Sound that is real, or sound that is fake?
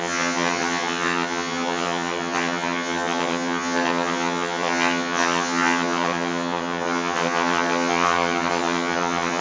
fake